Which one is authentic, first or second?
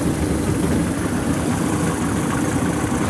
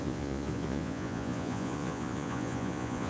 first